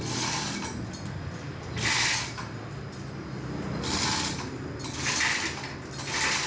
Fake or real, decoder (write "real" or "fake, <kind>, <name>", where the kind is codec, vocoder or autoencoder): real